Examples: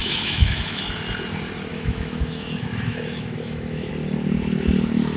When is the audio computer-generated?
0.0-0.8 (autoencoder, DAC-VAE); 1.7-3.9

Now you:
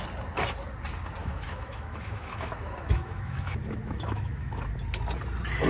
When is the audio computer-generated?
1.2-4.6 (autoencoder, DAC-VAE)